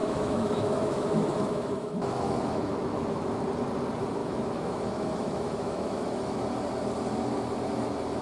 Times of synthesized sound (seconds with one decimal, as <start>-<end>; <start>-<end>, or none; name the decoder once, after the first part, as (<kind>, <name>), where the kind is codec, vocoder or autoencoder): 0.0-3.4 (autoencoder, DAC-VAE); 4.2-6.4